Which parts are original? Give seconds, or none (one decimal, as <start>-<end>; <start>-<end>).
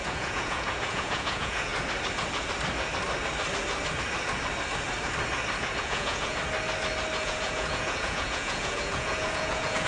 1.7-5.6; 6.4-7.2